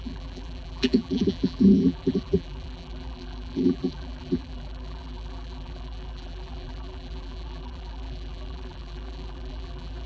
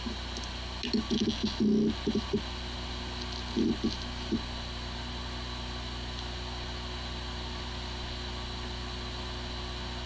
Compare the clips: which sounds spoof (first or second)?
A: first